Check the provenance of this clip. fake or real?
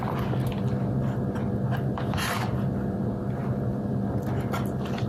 real